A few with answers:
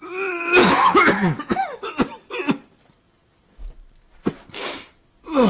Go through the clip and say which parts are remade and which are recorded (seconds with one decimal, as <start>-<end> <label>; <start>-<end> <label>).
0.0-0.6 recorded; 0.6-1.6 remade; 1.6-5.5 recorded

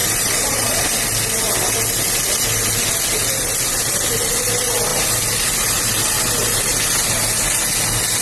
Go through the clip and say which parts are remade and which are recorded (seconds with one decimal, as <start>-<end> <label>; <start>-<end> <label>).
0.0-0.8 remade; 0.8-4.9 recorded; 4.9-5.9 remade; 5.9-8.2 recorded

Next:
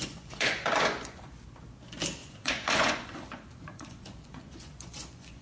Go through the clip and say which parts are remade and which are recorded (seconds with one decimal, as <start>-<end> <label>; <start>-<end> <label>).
0.0-1.3 remade; 1.3-2.2 recorded; 2.2-5.4 remade

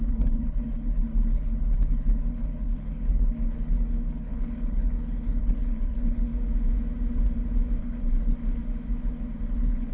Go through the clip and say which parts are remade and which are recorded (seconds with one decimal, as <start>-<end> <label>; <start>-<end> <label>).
0.0-6.3 remade; 6.3-7.8 recorded; 7.8-8.6 remade; 8.6-9.5 recorded; 9.5-9.9 remade

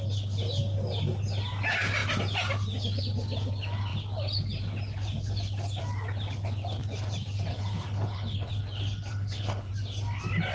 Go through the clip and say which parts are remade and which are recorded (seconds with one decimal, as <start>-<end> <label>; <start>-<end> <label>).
0.0-7.5 recorded; 7.5-8.5 remade; 8.5-9.1 recorded; 9.1-9.7 remade; 9.7-10.5 recorded

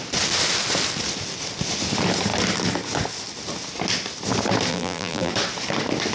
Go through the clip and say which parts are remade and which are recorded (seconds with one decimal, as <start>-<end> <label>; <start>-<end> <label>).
0.0-4.7 recorded; 4.7-5.3 remade; 5.3-6.1 recorded